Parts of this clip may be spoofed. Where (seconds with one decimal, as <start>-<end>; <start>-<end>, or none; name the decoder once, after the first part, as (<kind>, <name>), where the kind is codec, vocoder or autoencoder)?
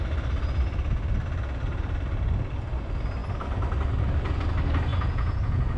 4.9-5.8 (vocoder, Vocos)